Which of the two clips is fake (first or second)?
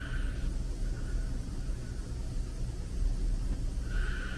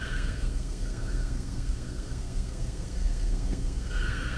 second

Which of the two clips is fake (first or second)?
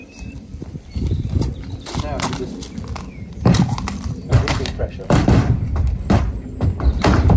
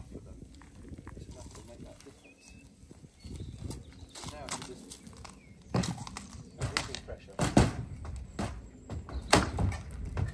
first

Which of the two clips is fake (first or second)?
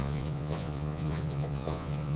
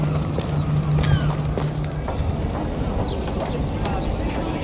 first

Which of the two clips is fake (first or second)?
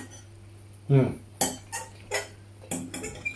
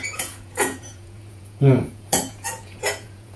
second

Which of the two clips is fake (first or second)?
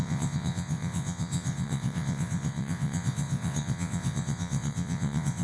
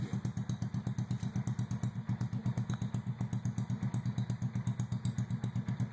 first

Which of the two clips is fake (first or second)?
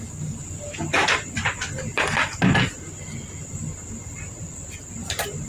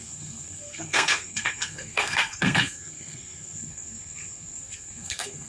second